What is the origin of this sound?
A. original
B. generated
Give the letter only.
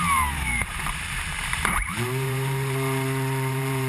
B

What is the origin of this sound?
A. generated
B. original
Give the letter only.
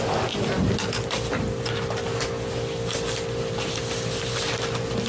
B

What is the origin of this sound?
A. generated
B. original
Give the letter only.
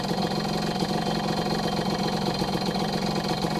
B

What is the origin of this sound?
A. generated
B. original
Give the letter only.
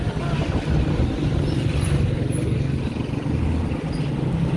B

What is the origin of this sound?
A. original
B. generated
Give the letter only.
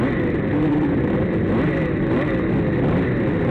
B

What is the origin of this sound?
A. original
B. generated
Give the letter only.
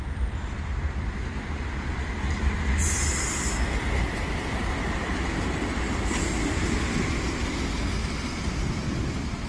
A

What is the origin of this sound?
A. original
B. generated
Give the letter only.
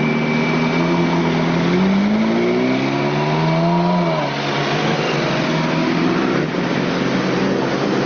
A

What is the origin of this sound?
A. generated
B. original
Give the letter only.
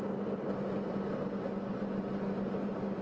B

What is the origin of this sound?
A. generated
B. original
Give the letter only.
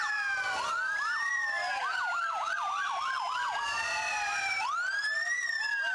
A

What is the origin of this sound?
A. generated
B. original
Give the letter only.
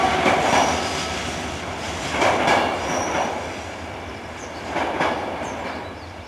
A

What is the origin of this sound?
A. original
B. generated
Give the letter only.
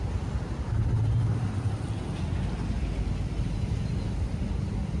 A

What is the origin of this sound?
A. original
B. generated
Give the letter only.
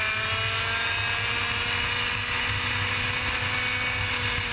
A